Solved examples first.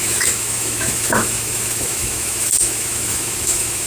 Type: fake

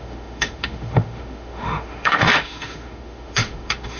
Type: fake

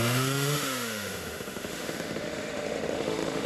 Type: fake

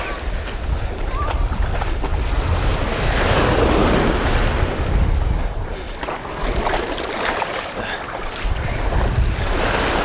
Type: real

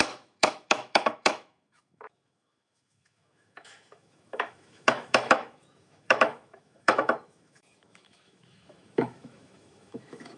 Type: fake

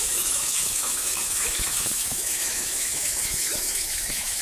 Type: fake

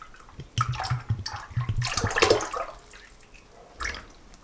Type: real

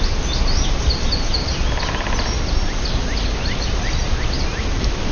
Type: real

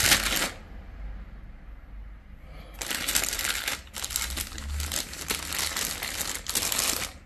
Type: real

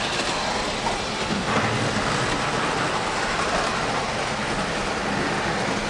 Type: real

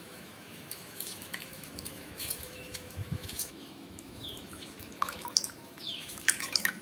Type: fake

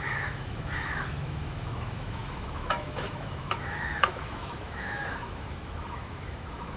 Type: fake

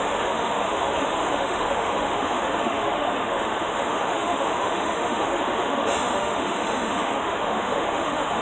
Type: fake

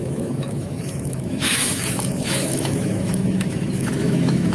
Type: fake